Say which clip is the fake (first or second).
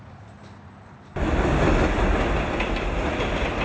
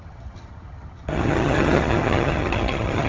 second